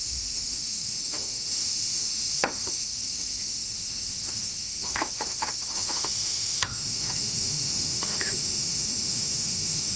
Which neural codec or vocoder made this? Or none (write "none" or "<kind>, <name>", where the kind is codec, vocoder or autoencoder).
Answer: autoencoder, DAC-VAE